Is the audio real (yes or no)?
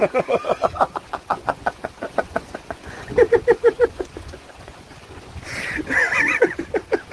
no